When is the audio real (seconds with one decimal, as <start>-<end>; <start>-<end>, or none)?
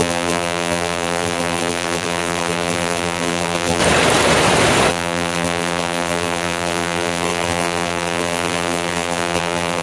3.8-4.9